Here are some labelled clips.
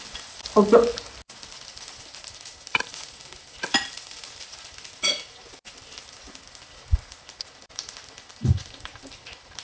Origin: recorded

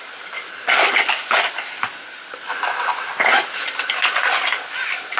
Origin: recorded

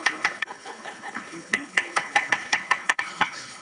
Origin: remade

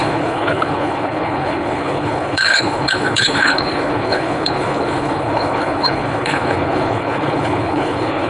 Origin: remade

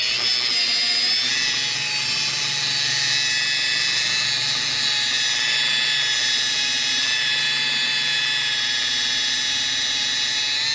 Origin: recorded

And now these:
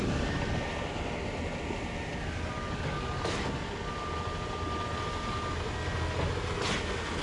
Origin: recorded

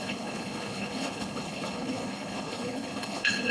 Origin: remade